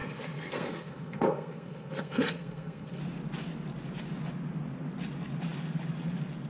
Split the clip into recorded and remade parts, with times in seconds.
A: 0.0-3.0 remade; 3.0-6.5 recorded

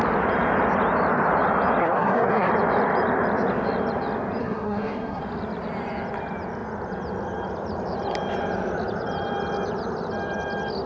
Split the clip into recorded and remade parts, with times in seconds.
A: 0.0-1.8 recorded; 1.8-2.5 remade; 2.5-4.4 recorded; 4.4-5.2 remade; 5.2-10.9 recorded

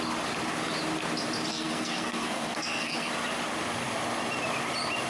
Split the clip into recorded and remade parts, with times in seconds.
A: 0.0-1.5 recorded; 1.5-3.1 remade; 3.1-5.1 recorded

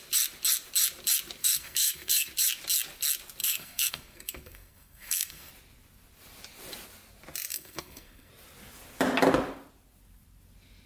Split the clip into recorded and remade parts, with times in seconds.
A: 0.0-1.4 recorded; 1.4-2.3 remade; 2.3-3.4 recorded; 3.4-5.5 remade; 5.5-7.5 recorded; 7.5-8.3 remade; 8.3-10.9 recorded